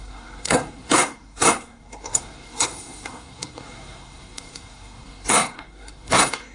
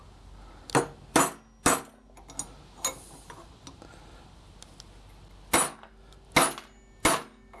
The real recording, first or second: second